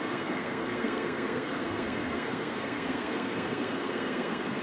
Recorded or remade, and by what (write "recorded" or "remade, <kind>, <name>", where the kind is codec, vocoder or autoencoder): remade, codec, SNAC